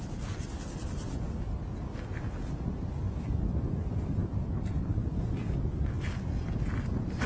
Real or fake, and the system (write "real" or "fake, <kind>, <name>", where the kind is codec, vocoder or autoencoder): real